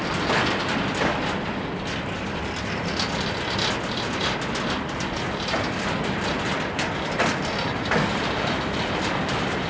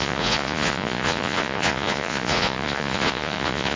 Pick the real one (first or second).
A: first